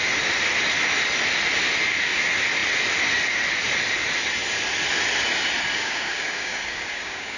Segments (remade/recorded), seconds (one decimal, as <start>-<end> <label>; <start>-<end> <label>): 0.0-5.7 recorded; 5.7-7.4 remade